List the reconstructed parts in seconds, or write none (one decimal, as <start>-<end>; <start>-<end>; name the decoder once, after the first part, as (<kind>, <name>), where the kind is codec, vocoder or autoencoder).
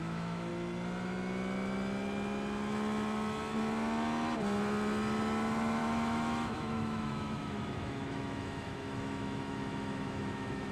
0.0-0.5 (autoencoder, DAC-VAE); 5.8-10.7